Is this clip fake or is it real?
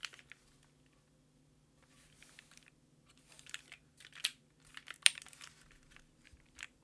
real